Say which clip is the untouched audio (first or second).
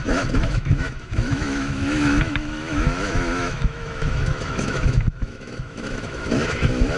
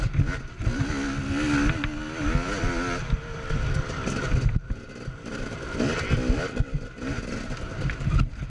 second